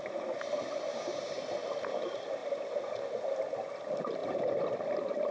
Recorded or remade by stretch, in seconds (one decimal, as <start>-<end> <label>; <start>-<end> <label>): 0.0-0.9 recorded; 0.9-1.4 remade; 1.4-5.3 recorded